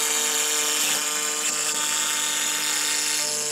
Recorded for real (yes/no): yes